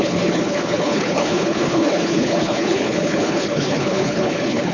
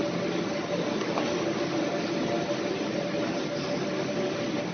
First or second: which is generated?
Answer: first